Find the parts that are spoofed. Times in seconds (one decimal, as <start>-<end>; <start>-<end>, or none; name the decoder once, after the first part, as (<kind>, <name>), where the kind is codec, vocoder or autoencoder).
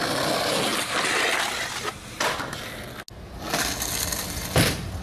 none